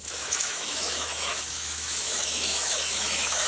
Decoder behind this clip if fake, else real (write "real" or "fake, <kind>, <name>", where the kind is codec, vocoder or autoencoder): fake, autoencoder, DAC-VAE